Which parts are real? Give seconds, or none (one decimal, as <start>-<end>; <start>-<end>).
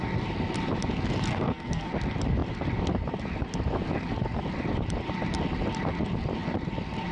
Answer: 0.0-1.3; 1.9-7.1